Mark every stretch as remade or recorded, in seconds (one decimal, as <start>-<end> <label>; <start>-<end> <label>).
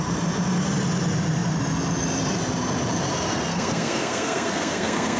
0.0-3.5 recorded; 3.5-5.2 remade